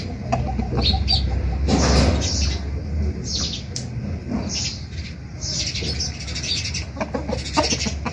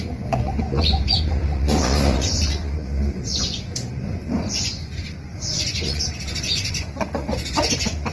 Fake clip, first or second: second